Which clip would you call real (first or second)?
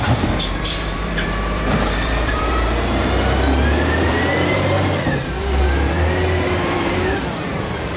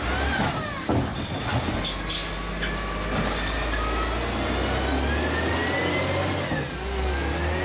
second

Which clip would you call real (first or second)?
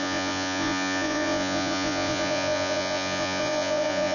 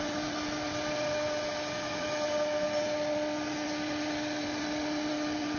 second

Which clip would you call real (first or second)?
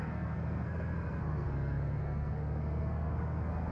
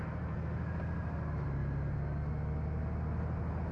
second